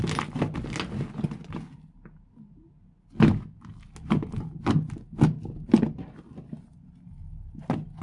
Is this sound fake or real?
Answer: real